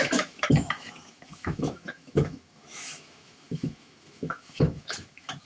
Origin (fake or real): fake